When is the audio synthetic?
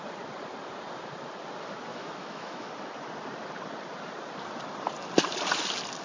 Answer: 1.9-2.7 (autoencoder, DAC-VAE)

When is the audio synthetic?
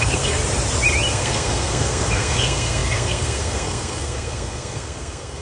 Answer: 0.0-0.4 (codec, SNAC); 1.1-5.4